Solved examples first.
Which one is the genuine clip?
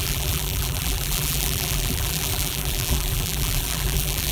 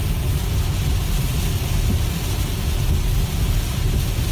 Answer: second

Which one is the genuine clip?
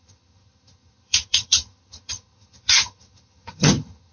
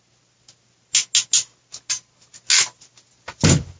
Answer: second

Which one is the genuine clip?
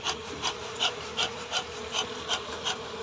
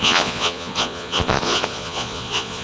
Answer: first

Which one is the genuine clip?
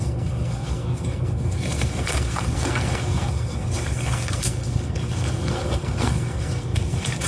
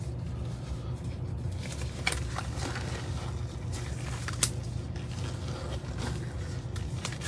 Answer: second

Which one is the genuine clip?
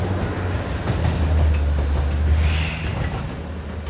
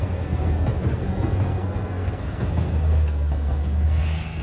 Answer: first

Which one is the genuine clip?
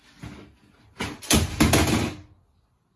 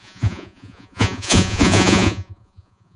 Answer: first